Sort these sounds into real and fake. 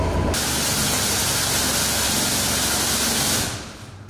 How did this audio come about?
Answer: real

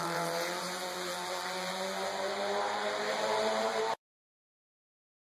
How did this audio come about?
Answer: fake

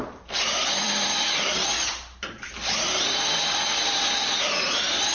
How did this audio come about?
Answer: fake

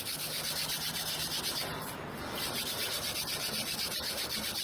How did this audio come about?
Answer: real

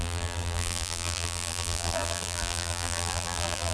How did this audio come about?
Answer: fake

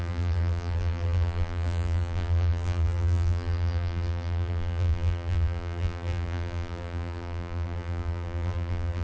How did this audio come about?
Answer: fake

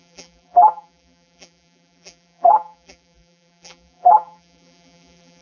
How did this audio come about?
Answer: fake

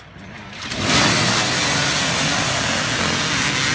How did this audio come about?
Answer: real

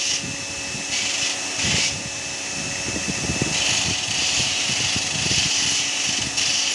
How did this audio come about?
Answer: real